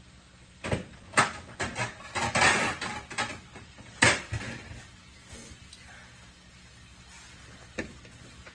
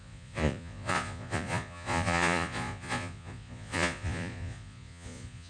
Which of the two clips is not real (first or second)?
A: second